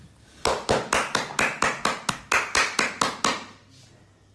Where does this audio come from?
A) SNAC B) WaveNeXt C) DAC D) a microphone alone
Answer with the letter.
D